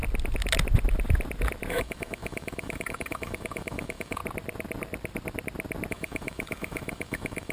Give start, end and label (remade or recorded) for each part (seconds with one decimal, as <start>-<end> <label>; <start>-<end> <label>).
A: 0.0-1.7 recorded; 1.7-4.2 remade; 4.2-5.9 recorded; 5.9-7.5 remade